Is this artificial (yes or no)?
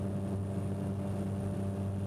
no